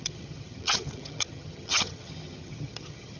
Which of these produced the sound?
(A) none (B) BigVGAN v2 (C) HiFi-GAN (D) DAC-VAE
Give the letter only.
C